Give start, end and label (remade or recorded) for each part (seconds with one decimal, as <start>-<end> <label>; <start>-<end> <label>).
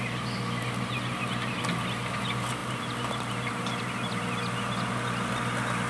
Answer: 0.0-5.9 recorded